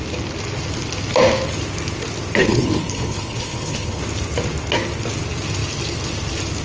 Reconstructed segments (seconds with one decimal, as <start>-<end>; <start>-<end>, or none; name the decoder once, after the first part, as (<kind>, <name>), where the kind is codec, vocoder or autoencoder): 2.4-4.0 (codec, HILCodec)